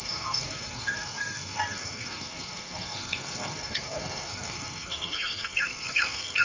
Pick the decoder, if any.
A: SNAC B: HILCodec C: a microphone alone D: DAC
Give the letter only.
A